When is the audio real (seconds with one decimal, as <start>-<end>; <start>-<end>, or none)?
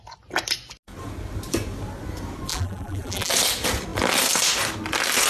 0.0-2.5; 3.3-5.3